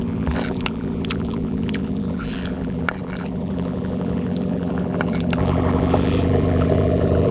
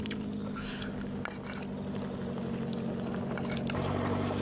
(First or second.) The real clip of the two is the second